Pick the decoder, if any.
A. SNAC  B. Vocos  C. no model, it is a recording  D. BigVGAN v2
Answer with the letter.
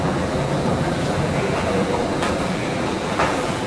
D